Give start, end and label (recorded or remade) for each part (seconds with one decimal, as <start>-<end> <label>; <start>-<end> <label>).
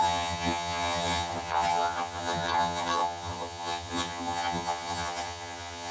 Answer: 0.0-5.9 remade